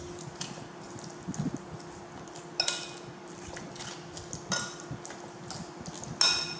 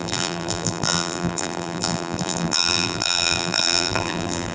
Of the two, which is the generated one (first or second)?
second